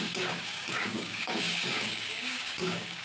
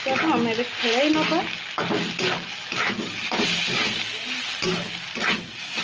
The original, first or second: second